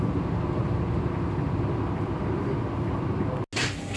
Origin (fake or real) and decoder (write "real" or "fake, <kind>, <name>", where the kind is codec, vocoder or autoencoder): real